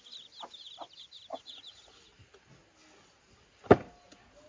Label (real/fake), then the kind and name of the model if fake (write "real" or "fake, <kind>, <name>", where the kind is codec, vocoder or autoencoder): real